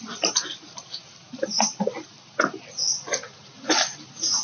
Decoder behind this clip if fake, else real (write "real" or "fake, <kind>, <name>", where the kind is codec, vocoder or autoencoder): real